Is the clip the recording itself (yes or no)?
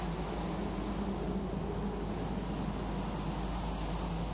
yes